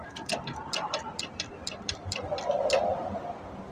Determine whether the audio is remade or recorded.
remade